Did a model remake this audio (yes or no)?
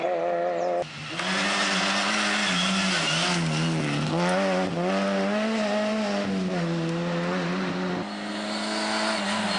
no